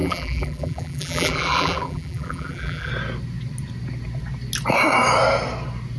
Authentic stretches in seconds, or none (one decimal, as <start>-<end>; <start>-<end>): 2.9-6.0